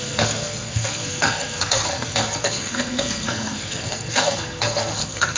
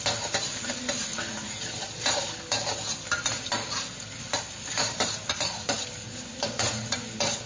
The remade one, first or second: first